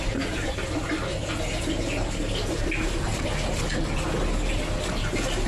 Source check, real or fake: real